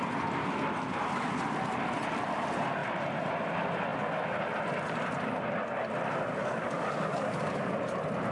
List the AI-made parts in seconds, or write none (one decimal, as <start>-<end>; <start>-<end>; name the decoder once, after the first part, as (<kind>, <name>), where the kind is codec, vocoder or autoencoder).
6.4-7.7 (codec, DAC)